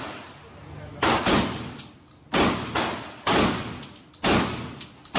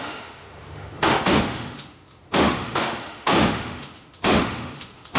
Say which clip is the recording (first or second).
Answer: first